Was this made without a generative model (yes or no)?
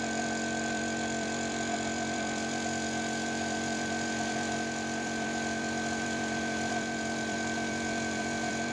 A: no